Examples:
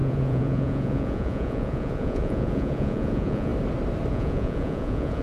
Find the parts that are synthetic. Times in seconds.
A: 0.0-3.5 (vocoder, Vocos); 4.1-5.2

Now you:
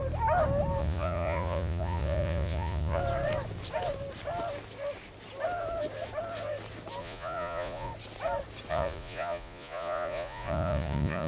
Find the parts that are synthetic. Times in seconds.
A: 0.8-3.0 (vocoder, Vocos); 7.0-7.9; 8.7-11.3

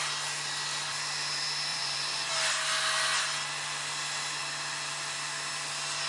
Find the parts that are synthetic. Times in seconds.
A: 1.7-2.3 (vocoder, Vocos)

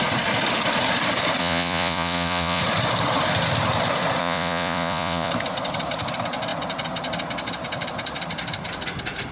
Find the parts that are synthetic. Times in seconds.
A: 1.4-2.6 (vocoder, Vocos); 4.2-5.3

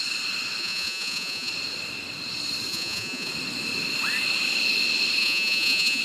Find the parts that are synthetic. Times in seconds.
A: 0.6-1.5 (vocoder, Vocos); 2.7-3.3; 5.2-6.0

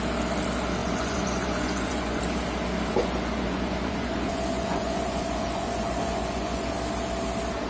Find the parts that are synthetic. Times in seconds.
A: 0.8-2.2 (vocoder, Vocos); 3.0-6.7